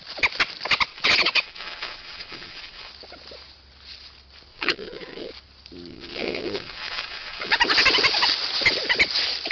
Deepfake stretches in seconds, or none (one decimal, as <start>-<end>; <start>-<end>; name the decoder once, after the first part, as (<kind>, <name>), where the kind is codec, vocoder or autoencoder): 0.9-2.9 (vocoder, WaveNeXt); 4.5-5.3; 5.9-7.6